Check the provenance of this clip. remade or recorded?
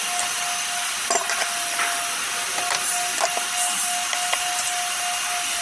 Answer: recorded